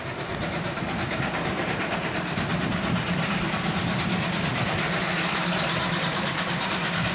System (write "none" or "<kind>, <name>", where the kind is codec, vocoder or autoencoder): vocoder, BigVGAN v2